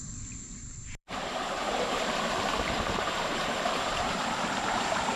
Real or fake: fake